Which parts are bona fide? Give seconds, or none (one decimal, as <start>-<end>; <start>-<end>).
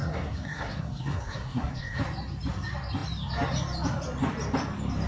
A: 2.0-5.1